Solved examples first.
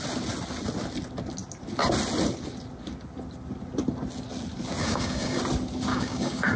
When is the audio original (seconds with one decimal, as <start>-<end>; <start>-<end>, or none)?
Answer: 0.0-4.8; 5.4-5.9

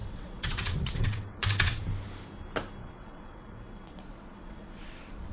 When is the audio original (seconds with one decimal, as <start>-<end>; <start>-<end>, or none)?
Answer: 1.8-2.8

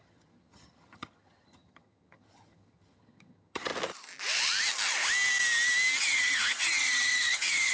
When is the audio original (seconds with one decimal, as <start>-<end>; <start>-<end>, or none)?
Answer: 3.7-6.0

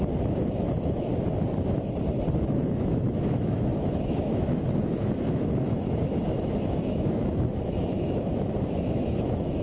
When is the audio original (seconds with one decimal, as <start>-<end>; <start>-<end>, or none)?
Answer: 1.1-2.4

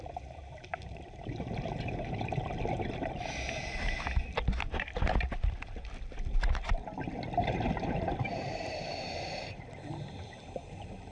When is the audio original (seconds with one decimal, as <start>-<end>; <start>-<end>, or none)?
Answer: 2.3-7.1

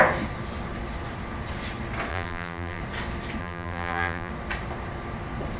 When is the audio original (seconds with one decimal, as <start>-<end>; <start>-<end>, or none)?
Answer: 0.0-2.1; 2.8-3.4; 4.3-5.6

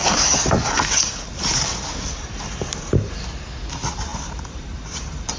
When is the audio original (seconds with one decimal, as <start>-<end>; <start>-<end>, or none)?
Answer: 3.2-4.1